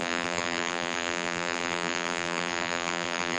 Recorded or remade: remade